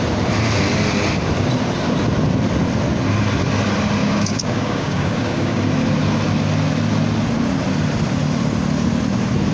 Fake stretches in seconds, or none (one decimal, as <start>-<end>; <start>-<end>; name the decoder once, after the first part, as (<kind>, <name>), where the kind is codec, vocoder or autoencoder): 4.0-5.6 (codec, DAC)